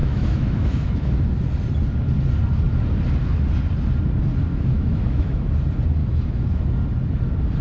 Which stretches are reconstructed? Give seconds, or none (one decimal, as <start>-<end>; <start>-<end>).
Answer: 0.0-1.1; 4.5-5.5; 6.0-6.6